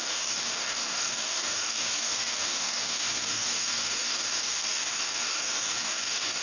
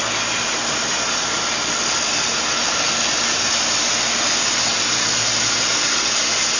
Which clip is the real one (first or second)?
second